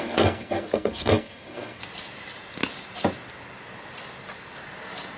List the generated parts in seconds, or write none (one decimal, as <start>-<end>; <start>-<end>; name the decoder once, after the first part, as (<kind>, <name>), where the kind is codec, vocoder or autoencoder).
0.0-1.8 (codec, SNAC)